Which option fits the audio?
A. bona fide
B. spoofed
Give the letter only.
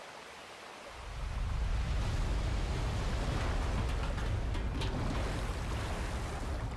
A